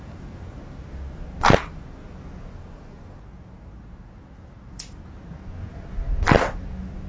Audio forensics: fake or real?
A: real